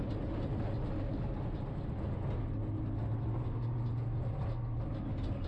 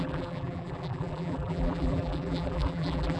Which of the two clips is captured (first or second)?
first